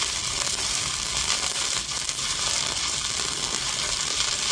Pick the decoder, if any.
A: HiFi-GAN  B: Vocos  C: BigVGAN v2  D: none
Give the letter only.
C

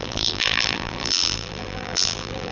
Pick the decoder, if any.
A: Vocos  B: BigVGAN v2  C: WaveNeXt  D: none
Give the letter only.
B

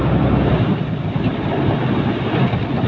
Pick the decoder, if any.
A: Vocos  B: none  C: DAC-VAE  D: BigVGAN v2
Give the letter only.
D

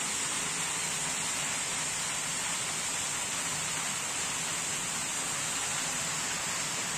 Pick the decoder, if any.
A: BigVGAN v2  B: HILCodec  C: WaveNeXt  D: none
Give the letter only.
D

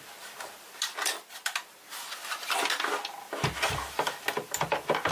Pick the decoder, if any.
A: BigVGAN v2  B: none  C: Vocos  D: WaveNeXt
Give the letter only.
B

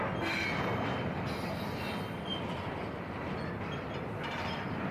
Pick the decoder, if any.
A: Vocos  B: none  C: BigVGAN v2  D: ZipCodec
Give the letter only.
B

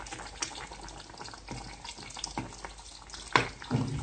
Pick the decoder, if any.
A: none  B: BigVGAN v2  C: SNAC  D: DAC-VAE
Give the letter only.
A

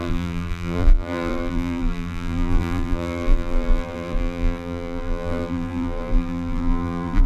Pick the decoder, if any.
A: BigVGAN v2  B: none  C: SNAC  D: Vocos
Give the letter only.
A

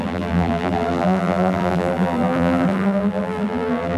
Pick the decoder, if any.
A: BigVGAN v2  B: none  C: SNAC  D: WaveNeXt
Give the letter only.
A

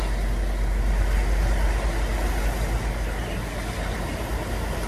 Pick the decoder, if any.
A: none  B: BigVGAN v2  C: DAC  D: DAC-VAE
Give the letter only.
A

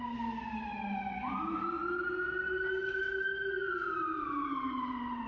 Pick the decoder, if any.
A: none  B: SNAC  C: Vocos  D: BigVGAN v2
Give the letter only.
A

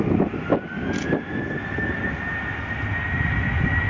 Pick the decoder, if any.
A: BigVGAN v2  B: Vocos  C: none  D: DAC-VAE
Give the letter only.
C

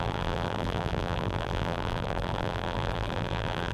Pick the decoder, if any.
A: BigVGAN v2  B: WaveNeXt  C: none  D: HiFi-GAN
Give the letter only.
A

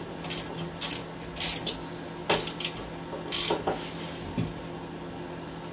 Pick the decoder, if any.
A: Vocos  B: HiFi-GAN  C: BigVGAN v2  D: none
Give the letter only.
D